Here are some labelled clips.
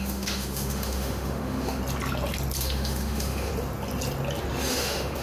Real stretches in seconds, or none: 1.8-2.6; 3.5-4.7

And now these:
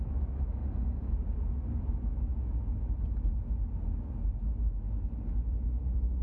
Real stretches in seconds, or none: 0.6-1.8; 2.3-6.2

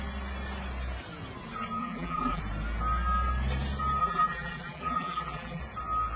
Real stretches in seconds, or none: 0.0-1.8; 2.4-4.0; 5.6-6.2

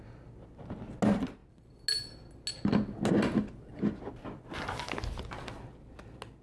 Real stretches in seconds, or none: 0.0-6.4

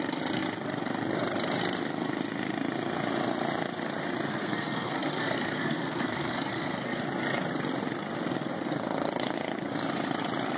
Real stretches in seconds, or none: 0.0-4.3; 7.0-10.6

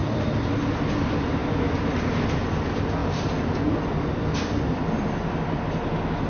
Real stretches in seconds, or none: 0.5-3.0; 5.6-6.3